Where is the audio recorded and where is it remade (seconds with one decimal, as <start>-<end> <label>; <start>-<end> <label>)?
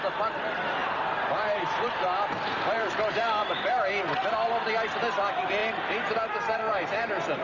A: 0.0-0.8 recorded; 0.8-3.9 remade; 3.9-5.6 recorded; 5.6-7.4 remade